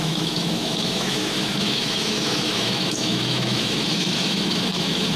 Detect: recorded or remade remade